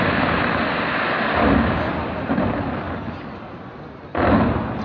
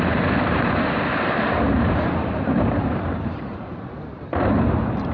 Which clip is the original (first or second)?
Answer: first